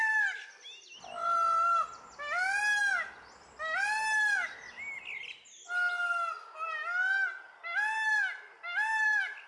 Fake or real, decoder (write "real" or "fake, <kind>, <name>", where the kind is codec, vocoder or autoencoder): real